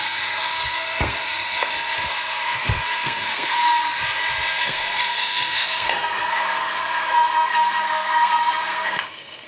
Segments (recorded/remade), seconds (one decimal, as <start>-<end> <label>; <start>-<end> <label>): 0.0-4.0 remade; 4.0-4.6 recorded; 4.6-9.5 remade

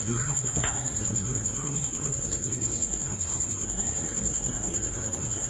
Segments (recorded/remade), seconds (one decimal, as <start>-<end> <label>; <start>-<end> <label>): 0.0-5.5 remade

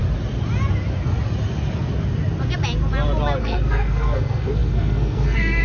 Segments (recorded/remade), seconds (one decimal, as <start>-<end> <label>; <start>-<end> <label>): 0.0-3.4 recorded; 3.4-5.6 remade

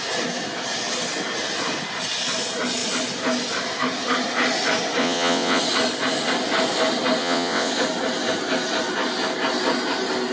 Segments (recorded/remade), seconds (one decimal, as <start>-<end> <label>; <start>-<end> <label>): 0.0-5.0 recorded; 5.0-5.6 remade; 5.6-7.2 recorded; 7.2-7.7 remade; 7.7-10.3 recorded

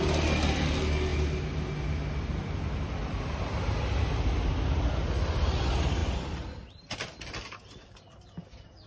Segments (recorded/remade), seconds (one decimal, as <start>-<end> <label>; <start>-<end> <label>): 0.0-8.9 recorded

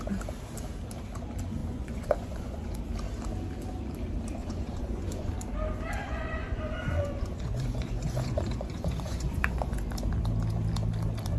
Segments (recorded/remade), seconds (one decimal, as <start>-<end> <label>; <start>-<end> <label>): 0.0-1.6 recorded; 1.6-2.8 remade; 2.8-4.4 recorded; 4.4-5.3 remade; 5.3-6.0 recorded; 6.0-9.8 remade; 9.8-11.4 recorded